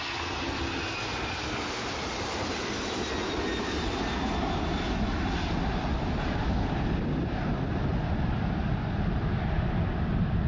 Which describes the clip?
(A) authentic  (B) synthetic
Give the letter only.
A